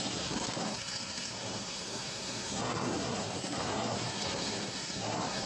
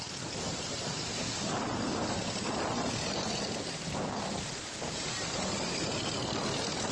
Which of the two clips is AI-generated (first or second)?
first